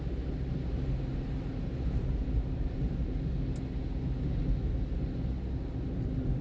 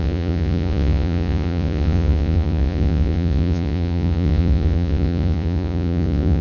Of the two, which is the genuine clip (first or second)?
first